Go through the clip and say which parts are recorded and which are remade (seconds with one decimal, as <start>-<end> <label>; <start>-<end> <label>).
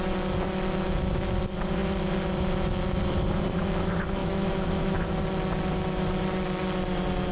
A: 0.0-4.2 recorded; 4.2-5.2 remade; 5.2-7.3 recorded